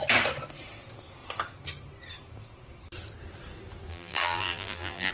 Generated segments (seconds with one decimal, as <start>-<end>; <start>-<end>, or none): 3.9-5.1